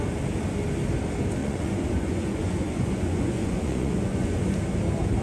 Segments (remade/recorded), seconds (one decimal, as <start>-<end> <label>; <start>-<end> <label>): 0.0-1.4 recorded; 1.4-4.5 remade; 4.5-5.2 recorded